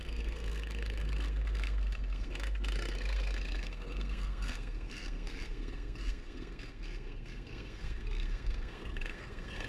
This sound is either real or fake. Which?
fake